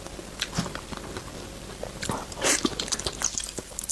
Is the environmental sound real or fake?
fake